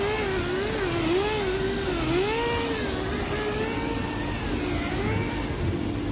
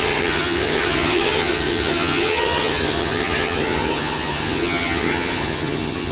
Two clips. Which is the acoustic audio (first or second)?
first